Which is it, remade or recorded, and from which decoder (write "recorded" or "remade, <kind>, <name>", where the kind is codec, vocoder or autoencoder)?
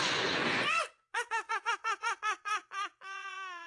remade, vocoder, Vocos